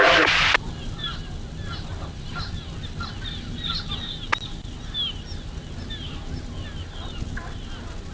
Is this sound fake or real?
real